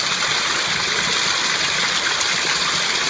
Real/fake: real